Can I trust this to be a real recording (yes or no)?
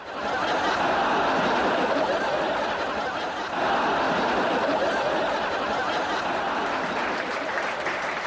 yes